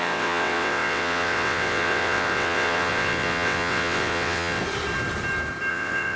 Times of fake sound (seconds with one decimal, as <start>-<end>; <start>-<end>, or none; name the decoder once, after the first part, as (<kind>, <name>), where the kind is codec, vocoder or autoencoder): 0.0-4.6 (vocoder, WaveNeXt); 5.7-6.2